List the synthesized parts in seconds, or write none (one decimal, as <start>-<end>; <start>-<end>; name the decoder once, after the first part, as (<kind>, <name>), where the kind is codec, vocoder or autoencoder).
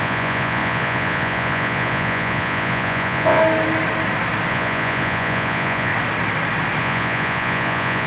0.0-3.4 (vocoder, Vocos); 4.5-5.9; 6.8-8.1